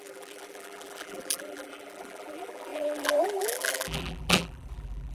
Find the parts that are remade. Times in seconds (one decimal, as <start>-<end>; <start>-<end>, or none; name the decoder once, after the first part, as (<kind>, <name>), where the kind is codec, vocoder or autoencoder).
0.0-5.1 (vocoder, BigVGAN v2)